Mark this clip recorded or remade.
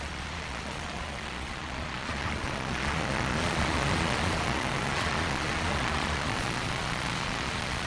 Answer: remade